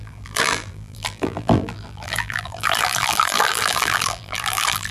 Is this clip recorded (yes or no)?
no